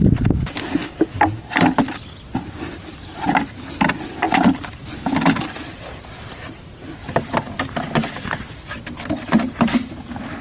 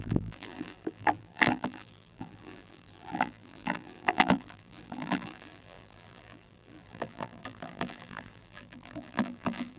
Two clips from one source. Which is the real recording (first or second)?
first